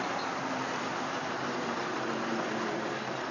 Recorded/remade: recorded